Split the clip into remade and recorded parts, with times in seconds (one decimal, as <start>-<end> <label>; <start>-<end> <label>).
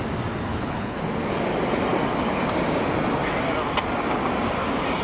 0.0-0.5 recorded; 0.5-1.0 remade; 1.0-5.0 recorded